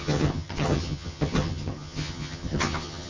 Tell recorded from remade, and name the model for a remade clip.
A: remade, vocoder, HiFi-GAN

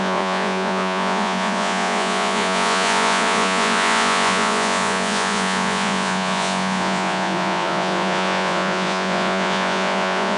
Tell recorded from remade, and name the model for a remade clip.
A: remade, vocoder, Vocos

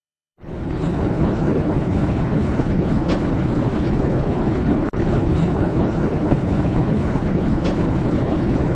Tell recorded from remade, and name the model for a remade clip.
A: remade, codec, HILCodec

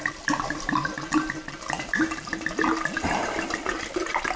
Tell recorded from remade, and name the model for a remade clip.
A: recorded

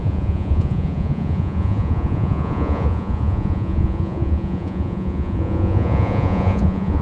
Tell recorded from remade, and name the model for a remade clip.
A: remade, vocoder, Vocos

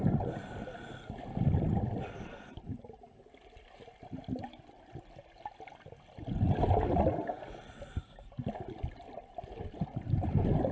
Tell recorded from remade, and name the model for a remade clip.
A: recorded